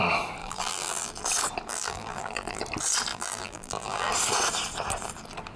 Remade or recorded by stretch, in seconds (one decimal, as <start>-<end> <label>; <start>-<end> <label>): 0.0-0.4 recorded; 0.4-1.1 remade; 1.1-1.7 recorded; 1.7-2.6 remade; 2.6-3.1 recorded; 3.1-4.1 remade; 4.1-5.6 recorded